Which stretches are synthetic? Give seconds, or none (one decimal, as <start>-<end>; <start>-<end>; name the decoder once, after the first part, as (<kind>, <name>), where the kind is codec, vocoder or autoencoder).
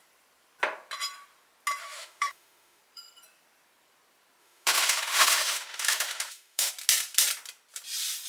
1.8-2.8 (autoencoder, DAC-VAE); 4.4-6.7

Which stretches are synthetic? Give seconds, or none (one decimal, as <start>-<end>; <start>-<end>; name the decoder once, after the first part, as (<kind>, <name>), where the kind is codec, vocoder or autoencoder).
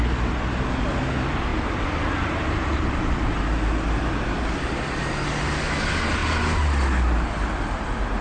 none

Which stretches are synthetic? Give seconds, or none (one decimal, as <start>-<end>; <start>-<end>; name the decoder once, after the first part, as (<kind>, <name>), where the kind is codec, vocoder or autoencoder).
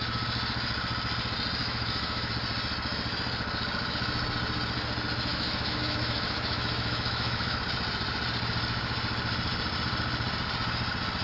1.6-2.3 (autoencoder, DAC-VAE); 5.3-7.6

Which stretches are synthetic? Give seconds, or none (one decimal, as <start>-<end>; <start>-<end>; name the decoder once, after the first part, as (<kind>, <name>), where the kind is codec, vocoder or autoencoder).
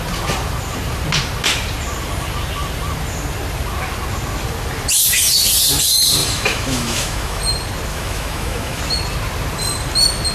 6.2-7.4 (autoencoder, DAC-VAE); 7.9-8.8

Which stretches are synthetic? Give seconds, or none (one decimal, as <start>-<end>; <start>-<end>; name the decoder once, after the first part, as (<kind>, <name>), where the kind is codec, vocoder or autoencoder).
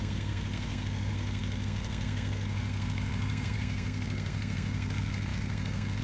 0.0-6.0 (codec, SNAC)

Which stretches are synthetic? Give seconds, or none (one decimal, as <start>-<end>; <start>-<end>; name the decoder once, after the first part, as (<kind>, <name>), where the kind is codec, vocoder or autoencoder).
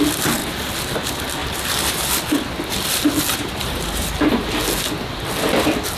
none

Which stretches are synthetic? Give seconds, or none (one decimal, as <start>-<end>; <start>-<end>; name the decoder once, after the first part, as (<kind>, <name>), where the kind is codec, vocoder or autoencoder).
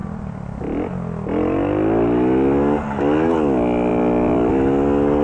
0.0-0.6 (vocoder, BigVGAN v2); 3.9-4.5